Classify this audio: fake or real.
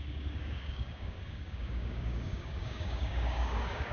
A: fake